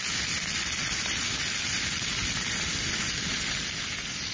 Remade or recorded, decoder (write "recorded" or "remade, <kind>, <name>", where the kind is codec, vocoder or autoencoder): recorded